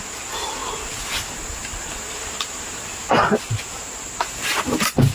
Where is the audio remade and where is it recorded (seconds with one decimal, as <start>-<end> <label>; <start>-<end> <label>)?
0.0-5.1 recorded

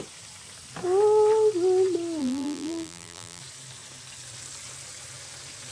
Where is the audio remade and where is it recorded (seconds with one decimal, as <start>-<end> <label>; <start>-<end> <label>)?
0.0-2.2 recorded; 2.2-3.4 remade; 3.4-5.7 recorded

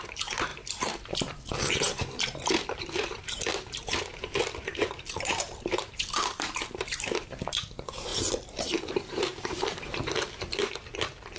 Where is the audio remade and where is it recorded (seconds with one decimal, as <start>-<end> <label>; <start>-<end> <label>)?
0.0-11.4 remade

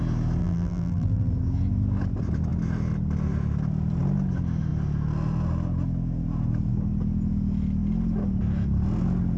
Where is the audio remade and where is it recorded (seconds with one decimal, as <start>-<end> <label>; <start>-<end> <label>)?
0.0-0.4 recorded; 0.4-1.3 remade; 1.3-9.4 recorded